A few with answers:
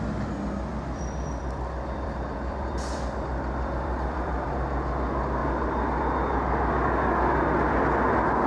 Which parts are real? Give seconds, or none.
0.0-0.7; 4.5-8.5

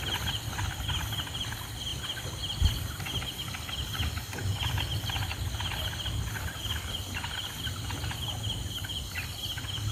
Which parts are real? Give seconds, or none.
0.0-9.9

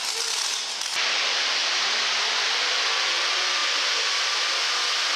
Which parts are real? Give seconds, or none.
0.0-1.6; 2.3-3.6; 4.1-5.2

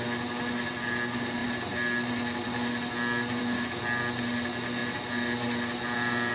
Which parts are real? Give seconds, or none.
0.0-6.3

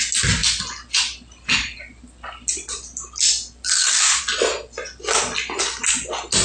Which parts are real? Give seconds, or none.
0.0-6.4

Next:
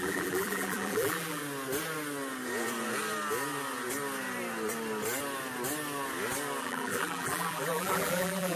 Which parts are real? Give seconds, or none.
1.4-6.6

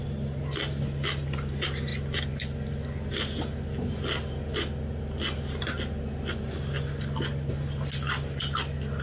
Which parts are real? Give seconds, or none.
1.9-6.0